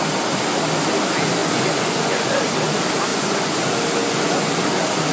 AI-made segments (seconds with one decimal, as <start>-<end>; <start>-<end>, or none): 1.4-2.4; 3.1-3.6; 4.0-4.6